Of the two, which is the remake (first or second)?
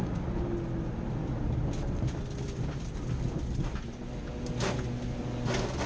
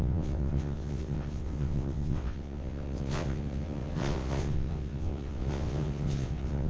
second